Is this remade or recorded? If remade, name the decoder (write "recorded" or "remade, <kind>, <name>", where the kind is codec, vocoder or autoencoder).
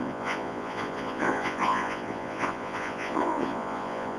remade, vocoder, Vocos